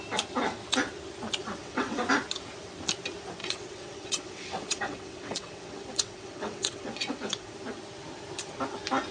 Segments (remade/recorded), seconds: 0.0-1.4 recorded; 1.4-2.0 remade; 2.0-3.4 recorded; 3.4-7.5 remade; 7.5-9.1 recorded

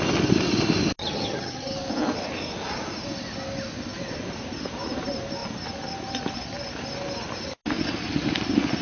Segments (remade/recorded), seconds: 0.0-1.0 recorded; 1.0-1.7 remade; 1.7-8.8 recorded

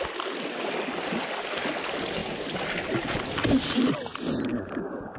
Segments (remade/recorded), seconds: 0.0-5.2 recorded